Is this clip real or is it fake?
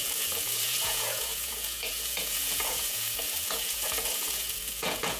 fake